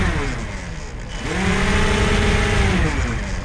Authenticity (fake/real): real